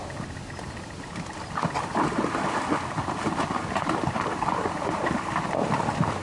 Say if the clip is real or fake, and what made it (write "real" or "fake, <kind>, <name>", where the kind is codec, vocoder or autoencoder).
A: real